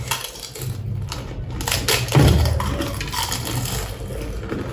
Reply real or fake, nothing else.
real